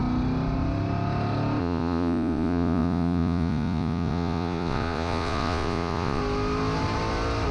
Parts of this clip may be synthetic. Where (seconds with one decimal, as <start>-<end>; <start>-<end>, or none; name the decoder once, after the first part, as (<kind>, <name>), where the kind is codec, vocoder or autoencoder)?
1.6-6.2 (vocoder, Vocos)

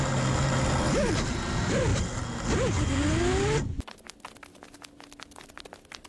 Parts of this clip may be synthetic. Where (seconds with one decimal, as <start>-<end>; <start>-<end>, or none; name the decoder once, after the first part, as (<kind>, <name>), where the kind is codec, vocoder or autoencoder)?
none

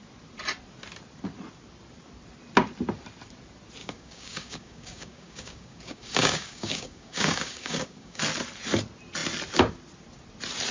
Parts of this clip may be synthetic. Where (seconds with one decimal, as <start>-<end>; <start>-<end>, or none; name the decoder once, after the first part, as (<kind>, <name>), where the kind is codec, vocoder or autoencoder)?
3.8-8.2 (codec, DAC)